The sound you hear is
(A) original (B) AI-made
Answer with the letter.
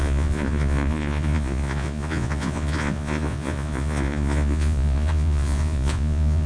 B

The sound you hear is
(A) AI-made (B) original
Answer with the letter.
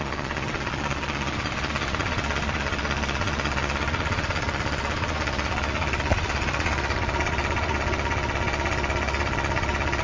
A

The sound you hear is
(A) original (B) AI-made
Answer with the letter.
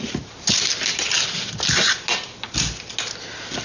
A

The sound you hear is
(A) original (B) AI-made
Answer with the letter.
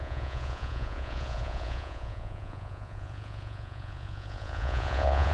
B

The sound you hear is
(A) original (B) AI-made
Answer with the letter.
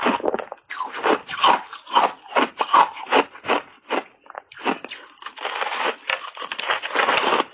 B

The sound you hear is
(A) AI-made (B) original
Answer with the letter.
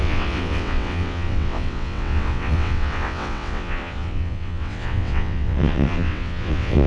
A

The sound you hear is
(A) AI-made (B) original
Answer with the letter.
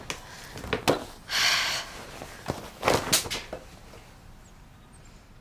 B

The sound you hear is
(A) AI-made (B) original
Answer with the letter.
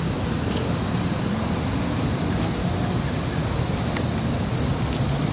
B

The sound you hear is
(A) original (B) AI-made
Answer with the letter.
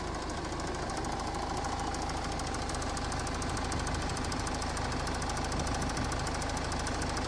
A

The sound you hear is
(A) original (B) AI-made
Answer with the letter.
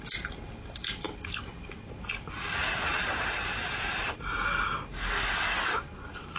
A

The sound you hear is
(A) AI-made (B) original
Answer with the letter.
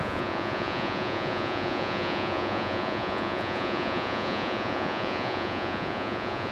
A